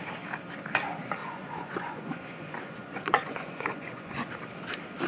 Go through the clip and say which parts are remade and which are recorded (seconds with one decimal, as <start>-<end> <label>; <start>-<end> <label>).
0.0-1.2 recorded; 1.2-4.3 remade; 4.3-5.1 recorded